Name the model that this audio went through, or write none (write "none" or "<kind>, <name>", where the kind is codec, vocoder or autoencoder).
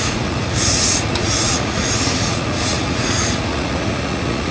vocoder, Vocos